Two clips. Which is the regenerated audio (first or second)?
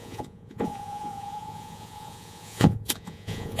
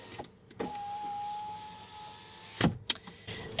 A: first